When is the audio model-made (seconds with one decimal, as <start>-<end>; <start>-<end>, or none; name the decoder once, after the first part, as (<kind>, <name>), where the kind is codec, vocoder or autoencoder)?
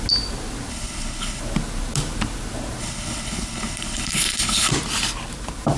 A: 0.7-1.4 (codec, HILCodec); 2.8-4.7